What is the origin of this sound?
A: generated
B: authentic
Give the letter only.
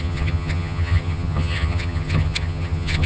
A